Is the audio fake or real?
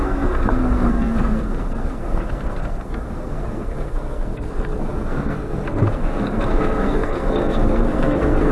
fake